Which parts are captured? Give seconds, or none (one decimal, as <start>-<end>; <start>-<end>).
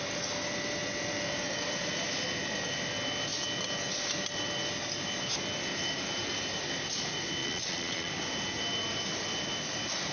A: 0.0-7.4; 8.1-10.1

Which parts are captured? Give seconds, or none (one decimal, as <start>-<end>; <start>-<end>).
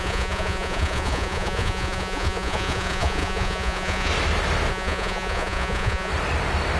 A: 4.1-4.7; 6.1-6.8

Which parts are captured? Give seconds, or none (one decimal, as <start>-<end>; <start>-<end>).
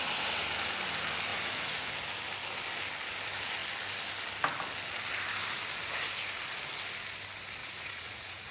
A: 0.0-1.3; 1.9-7.6